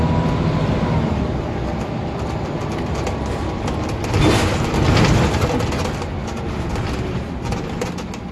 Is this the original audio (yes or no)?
yes